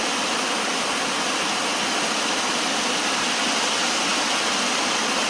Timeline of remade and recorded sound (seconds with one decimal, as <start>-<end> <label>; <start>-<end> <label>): 0.0-5.3 recorded